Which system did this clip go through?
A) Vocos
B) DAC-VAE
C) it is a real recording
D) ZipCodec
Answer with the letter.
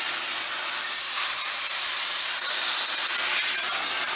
C